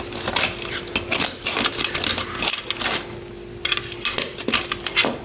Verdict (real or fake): real